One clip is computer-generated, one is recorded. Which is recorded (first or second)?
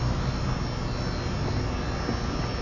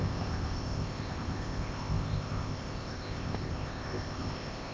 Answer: first